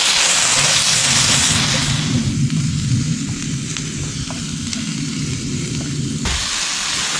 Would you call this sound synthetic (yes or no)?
no